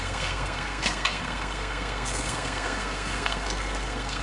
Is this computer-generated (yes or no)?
yes